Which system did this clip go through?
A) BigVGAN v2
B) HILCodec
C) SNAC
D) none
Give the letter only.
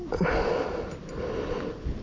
D